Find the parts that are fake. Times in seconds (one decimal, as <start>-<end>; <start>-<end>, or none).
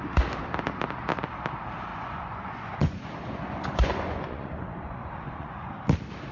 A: 1.9-5.7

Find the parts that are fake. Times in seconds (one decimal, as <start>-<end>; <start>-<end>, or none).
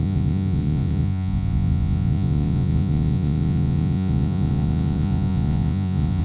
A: 0.0-6.2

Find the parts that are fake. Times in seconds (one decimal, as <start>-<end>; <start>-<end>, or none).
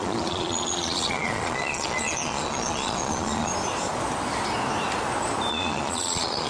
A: 0.0-3.5; 5.5-6.5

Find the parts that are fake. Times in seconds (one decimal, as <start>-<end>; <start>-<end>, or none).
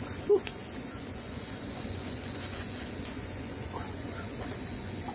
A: 0.0-5.1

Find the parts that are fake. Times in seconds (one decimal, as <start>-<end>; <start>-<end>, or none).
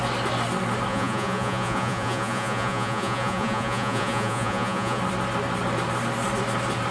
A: 0.9-5.0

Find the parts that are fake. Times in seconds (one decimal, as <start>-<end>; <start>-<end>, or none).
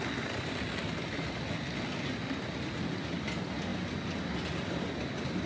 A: none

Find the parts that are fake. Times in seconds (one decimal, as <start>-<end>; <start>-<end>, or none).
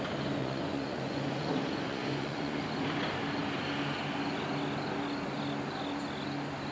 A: 0.4-2.6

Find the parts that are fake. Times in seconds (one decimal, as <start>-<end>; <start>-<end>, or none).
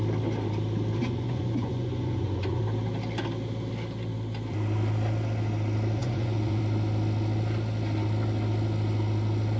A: 1.0-2.6; 6.0-6.6